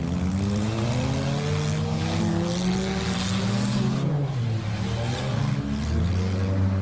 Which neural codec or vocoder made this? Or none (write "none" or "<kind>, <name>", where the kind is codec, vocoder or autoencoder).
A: none